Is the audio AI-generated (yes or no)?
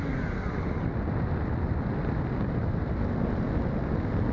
no